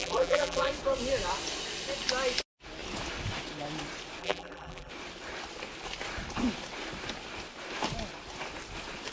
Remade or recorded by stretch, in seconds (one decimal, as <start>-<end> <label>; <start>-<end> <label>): 0.0-0.7 remade; 0.7-4.2 recorded; 4.2-4.9 remade; 4.9-9.1 recorded

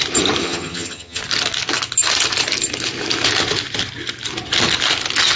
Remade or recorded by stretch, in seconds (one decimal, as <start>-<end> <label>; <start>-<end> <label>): 0.0-0.4 recorded; 0.4-1.2 remade; 1.2-5.4 recorded

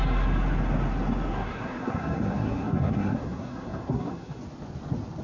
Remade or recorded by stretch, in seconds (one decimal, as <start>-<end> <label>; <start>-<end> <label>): 0.0-1.3 recorded; 1.3-4.4 remade; 4.4-5.2 recorded

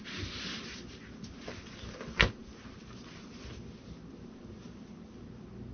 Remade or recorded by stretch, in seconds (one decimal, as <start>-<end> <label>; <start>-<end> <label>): 0.0-5.7 recorded

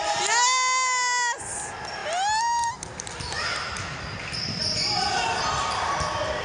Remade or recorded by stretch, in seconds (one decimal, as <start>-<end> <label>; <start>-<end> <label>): 0.0-6.4 recorded

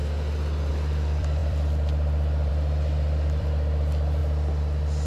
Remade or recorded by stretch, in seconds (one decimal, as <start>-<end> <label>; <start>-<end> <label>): 0.0-0.7 recorded; 0.7-4.2 remade; 4.2-5.1 recorded

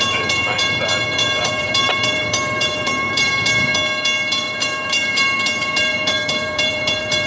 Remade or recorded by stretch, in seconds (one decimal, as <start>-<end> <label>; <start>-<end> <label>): 0.0-3.7 remade; 3.7-4.3 recorded; 4.3-7.3 remade

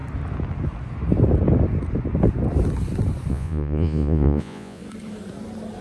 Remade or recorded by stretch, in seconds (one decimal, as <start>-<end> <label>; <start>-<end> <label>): 0.0-3.3 recorded; 3.3-4.8 remade; 4.8-5.8 recorded